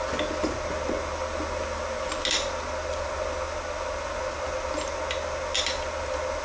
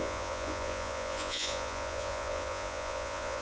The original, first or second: first